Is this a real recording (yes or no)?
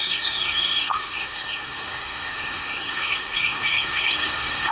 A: no